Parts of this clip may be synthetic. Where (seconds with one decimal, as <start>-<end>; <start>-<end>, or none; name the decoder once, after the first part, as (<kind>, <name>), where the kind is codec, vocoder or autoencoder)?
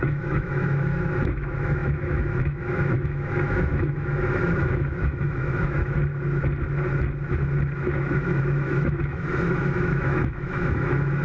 0.0-6.0 (autoencoder, DAC-VAE); 7.8-11.2